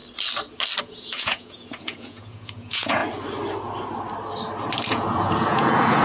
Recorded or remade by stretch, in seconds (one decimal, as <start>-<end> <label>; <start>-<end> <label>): 0.0-0.8 recorded; 0.8-3.0 remade; 3.0-4.9 recorded; 4.9-6.0 remade